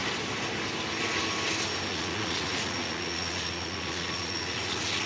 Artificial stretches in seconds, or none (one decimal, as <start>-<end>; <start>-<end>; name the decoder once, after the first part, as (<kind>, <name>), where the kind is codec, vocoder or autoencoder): 1.9-5.1 (vocoder, Vocos)